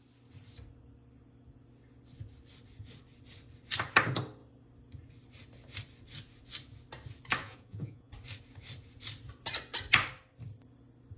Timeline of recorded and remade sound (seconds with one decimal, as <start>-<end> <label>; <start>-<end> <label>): 0.0-7.4 recorded; 7.4-8.1 remade; 8.1-11.2 recorded